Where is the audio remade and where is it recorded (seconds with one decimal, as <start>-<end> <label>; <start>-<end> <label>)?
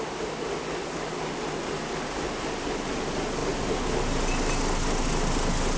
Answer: 0.0-5.8 recorded